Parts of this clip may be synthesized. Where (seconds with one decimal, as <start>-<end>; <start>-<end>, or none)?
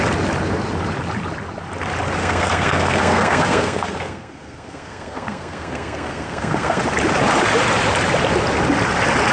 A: 2.2-6.8